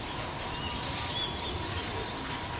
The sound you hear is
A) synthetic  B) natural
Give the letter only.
B